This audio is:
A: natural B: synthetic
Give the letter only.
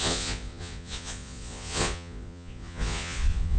B